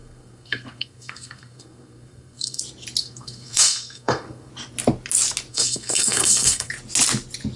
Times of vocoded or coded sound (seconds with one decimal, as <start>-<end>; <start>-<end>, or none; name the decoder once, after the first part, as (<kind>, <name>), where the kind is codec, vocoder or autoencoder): 0.0-2.6 (codec, SNAC); 3.0-4.5; 5.5-6.7